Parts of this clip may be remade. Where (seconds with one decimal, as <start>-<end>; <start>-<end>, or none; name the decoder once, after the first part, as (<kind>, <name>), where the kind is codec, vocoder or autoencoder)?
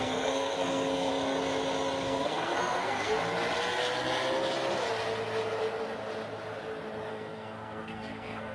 0.0-1.1 (codec, SNAC); 2.0-3.2; 7.1-8.5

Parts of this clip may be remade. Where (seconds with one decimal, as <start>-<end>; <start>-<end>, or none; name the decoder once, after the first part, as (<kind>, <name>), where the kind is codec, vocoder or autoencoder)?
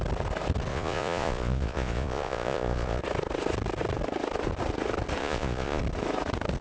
0.7-3.0 (vocoder, Vocos); 5.2-5.8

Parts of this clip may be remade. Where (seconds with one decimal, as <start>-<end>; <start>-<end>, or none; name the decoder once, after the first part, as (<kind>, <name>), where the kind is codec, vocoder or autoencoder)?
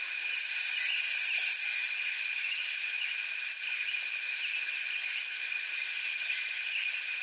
5.0-6.0 (vocoder, Vocos)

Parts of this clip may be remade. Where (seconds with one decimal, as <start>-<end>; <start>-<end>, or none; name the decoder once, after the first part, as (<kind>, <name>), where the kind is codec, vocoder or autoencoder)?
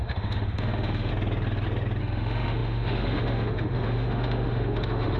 0.0-1.1 (autoencoder, DAC-VAE); 2.0-5.2